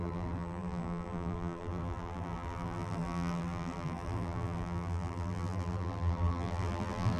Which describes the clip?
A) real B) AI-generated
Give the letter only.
B